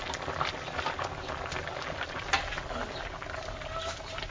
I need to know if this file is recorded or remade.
recorded